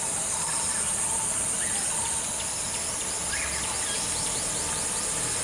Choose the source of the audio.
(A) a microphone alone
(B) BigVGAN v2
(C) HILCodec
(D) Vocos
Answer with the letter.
A